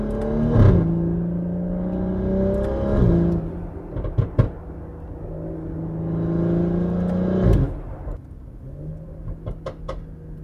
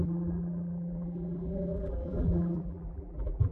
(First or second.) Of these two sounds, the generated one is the second